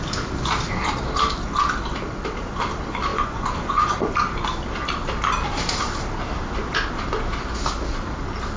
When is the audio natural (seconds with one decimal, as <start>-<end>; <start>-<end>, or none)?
0.0-3.1; 3.9-8.6